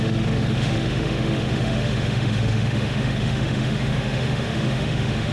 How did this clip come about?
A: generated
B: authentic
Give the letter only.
A